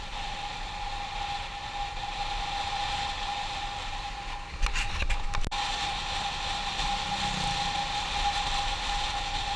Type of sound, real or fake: real